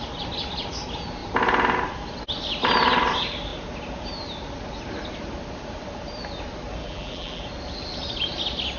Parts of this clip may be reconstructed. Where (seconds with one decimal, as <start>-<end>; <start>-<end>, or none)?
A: 6.8-7.4